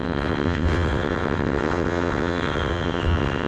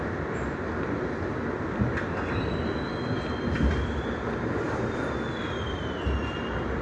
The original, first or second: second